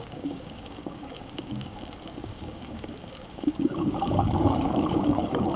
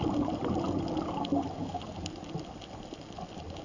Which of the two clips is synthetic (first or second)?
first